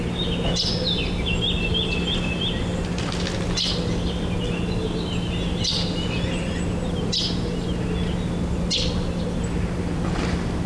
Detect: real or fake real